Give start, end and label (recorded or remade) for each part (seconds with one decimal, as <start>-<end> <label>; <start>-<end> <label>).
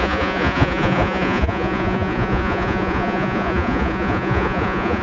0.0-5.0 remade